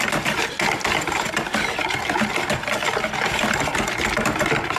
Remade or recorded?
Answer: recorded